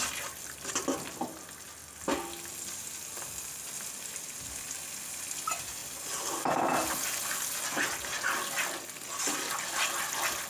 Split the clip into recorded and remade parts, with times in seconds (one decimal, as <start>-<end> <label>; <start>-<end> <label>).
0.0-10.5 recorded